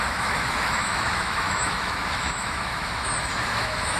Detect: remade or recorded remade